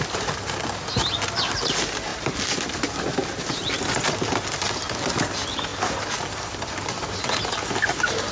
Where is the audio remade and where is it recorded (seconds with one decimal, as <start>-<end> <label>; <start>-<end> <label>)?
0.0-8.3 recorded